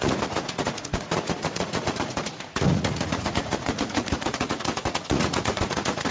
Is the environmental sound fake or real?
fake